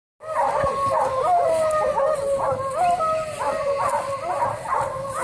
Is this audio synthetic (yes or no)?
no